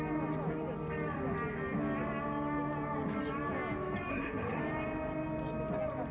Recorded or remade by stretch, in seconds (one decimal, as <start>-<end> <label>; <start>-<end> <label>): 0.0-4.1 recorded; 4.1-4.6 remade; 4.6-6.1 recorded